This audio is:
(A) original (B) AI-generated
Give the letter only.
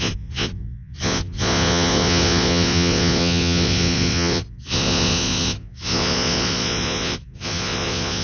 B